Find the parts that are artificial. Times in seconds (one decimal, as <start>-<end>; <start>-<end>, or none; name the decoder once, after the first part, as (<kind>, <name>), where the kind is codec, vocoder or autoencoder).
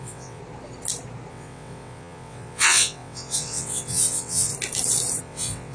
0.0-0.4 (vocoder, WaveNeXt); 1.3-4.5; 5.2-5.7